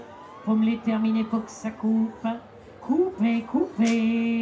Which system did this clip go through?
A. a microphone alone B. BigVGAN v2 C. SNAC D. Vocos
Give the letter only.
A